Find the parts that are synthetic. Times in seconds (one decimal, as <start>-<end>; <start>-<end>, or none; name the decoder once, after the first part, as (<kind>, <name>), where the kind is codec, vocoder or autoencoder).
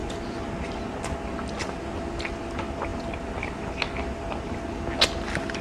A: none